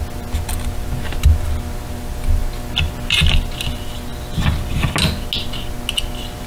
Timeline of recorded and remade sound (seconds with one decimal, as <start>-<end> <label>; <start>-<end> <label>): 0.0-6.5 recorded